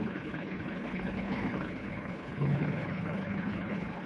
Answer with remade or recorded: remade